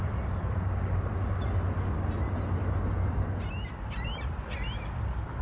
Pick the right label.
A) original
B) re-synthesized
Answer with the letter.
A